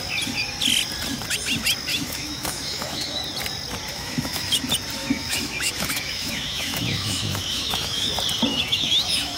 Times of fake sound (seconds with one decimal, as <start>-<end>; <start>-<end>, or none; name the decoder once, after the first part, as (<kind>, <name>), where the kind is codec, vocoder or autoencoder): 1.9-3.2 (autoencoder, DAC-VAE); 3.9-4.6; 5.0-8.1; 8.5-9.4